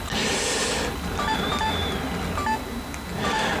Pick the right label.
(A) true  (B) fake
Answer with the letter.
A